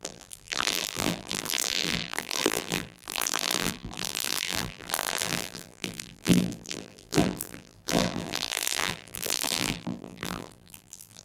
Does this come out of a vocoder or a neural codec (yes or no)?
yes